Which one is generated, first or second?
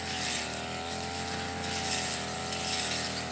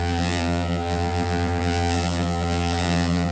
second